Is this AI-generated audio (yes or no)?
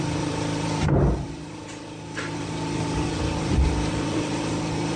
yes